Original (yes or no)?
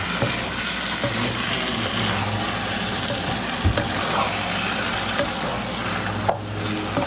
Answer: yes